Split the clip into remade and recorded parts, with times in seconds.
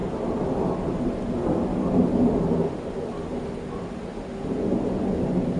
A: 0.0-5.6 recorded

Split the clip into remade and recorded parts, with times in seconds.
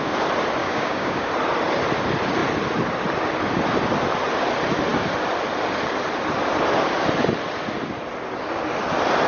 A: 0.0-0.6 recorded; 0.6-1.3 remade; 1.3-9.3 recorded